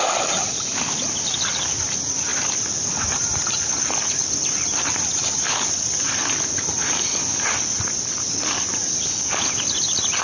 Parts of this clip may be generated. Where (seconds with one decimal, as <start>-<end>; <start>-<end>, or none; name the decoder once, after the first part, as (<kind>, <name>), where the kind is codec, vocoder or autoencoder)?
none